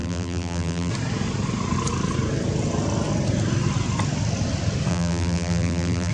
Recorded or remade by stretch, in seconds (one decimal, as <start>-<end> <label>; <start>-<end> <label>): 0.0-0.9 remade; 0.9-4.9 recorded; 4.9-6.1 remade